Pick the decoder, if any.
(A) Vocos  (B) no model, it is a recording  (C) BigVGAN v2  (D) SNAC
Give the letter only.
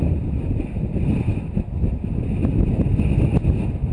B